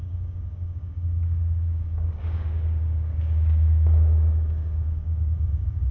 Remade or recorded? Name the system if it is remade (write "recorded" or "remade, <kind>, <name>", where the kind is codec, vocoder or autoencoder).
remade, codec, DAC